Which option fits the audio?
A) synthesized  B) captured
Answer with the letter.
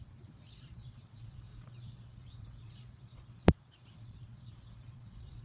A